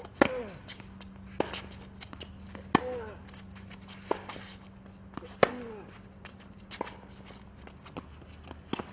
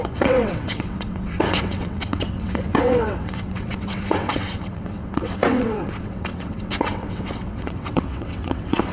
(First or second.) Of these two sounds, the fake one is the second